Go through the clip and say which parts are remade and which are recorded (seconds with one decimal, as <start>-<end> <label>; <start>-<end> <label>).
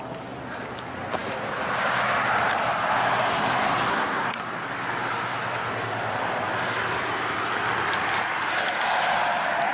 0.0-3.9 recorded; 3.9-4.4 remade; 4.4-9.7 recorded